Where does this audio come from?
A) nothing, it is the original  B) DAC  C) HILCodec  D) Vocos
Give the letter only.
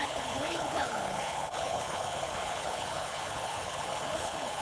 C